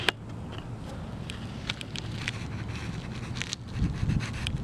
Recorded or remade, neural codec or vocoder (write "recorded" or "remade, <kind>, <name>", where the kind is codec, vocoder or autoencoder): recorded